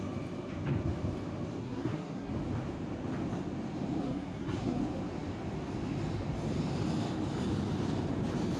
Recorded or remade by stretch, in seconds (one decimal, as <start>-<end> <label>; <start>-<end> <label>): 0.0-1.6 recorded; 1.6-2.3 remade; 2.3-4.0 recorded; 4.0-4.8 remade; 4.8-8.6 recorded